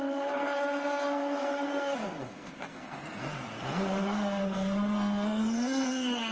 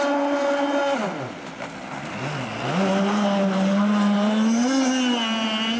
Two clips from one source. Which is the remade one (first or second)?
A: first